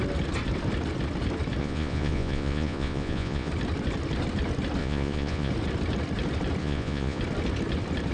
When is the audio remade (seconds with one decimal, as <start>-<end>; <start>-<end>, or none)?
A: 1.6-3.5; 4.8-5.5; 6.6-7.2